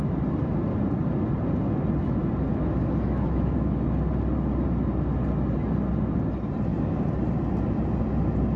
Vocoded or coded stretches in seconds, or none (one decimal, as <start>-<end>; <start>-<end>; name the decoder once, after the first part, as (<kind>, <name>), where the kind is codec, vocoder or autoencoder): 2.5-3.7 (autoencoder, DAC-VAE)